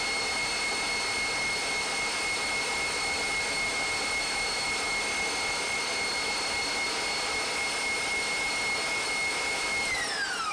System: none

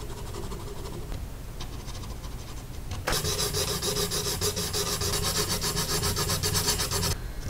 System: none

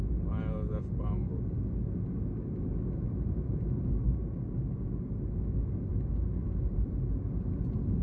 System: none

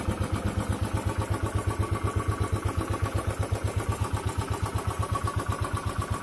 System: none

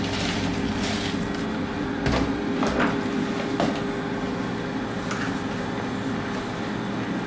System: none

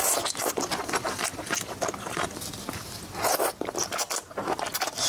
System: none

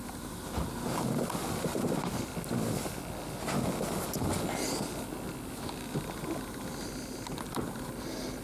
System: none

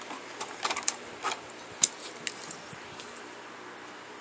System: none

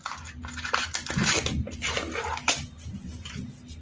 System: none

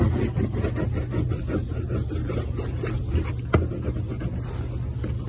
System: none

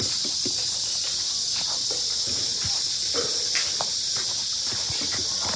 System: none